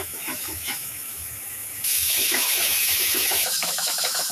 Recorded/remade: remade